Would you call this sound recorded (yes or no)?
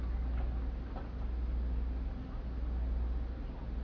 yes